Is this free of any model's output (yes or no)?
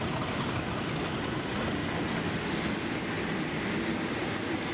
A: yes